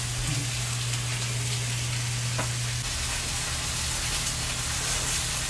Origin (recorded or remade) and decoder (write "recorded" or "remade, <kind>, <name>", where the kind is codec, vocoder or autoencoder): recorded